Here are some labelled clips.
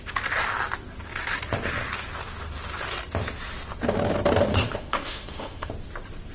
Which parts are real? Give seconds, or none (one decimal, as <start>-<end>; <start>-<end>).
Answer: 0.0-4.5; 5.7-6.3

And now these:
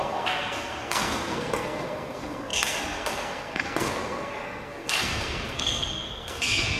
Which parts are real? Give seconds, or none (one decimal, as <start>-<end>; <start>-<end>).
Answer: none

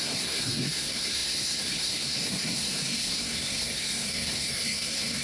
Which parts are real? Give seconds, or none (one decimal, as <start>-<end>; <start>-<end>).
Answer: none

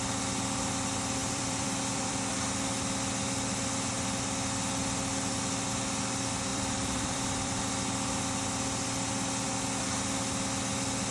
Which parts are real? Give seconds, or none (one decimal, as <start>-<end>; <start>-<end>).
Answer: 0.0-1.2; 2.3-6.5; 7.6-11.1

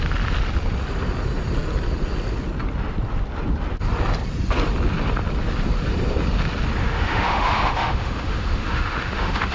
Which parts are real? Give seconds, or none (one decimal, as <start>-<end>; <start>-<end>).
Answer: 0.0-6.8